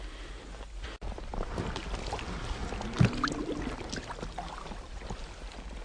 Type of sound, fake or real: real